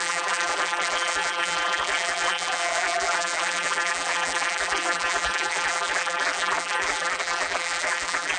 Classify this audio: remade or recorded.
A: remade